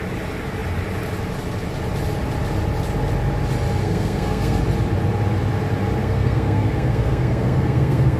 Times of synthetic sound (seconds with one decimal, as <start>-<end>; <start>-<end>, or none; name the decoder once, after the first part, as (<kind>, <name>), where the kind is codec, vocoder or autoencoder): 3.8-4.6 (codec, SNAC); 6.0-8.2